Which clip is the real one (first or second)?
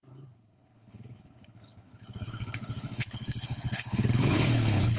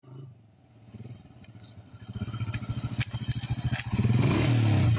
second